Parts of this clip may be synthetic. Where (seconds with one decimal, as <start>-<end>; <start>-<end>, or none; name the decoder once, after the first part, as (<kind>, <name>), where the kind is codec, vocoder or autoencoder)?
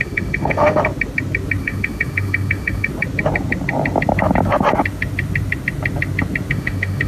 0.0-0.8 (autoencoder, DAC-VAE); 1.6-2.9; 6.5-7.1